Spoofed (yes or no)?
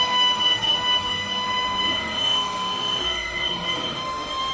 yes